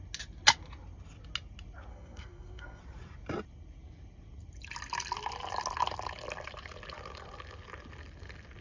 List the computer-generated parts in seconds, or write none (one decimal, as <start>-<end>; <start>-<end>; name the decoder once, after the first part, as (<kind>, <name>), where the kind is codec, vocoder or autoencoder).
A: 1.9-2.8 (codec, SNAC)